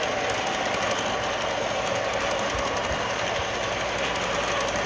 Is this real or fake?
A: real